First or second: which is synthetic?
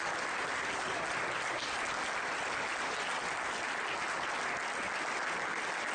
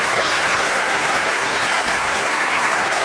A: second